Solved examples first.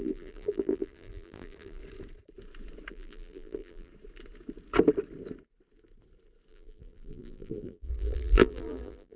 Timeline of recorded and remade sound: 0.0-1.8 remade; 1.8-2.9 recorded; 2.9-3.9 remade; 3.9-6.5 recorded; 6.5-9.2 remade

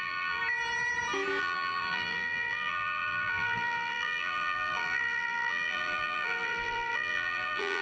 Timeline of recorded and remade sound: 0.0-0.4 remade; 0.4-1.4 recorded; 1.4-7.8 remade

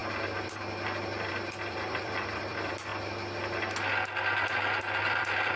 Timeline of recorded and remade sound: 0.0-1.3 recorded; 1.3-2.9 remade; 2.9-4.5 recorded; 4.5-5.6 remade

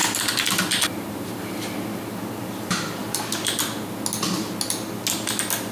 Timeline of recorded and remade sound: 0.0-1.5 remade; 1.5-3.0 recorded; 3.0-3.6 remade; 3.6-5.7 recorded

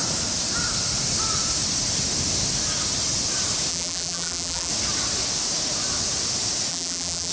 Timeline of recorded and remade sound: 0.0-3.7 recorded; 3.7-4.7 remade; 4.7-6.7 recorded; 6.7-7.3 remade